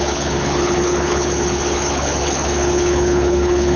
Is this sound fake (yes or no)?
yes